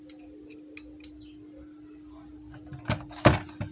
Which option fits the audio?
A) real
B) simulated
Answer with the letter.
A